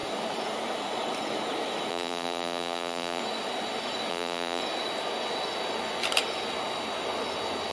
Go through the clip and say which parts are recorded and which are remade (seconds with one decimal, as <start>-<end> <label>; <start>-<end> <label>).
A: 0.0-1.9 recorded; 1.9-3.2 remade; 3.2-4.1 recorded; 4.1-4.6 remade; 4.6-7.7 recorded